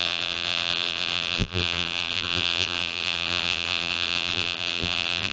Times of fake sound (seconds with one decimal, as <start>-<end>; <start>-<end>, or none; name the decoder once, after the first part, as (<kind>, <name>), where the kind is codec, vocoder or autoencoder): 0.0-5.3 (vocoder, BigVGAN v2)